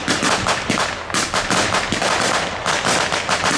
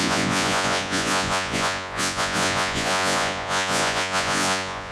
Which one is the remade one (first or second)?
second